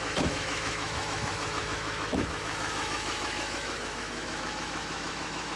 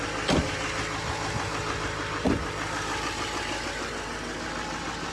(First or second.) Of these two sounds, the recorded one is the second